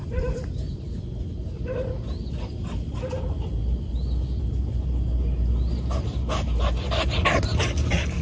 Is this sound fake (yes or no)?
no